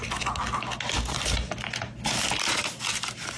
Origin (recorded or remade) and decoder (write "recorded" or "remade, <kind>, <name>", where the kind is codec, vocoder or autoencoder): recorded